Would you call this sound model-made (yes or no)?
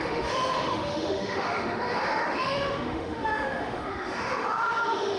yes